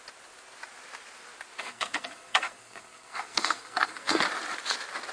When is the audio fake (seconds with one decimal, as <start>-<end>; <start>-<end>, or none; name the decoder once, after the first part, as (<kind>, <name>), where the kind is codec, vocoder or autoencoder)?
1.6-4.2 (codec, SNAC)